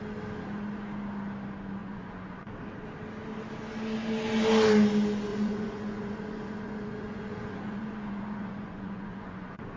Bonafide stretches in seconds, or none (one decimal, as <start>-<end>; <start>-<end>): 0.0-1.8; 2.5-5.3